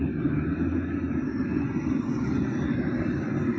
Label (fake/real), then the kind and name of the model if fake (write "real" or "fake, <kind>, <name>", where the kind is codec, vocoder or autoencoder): real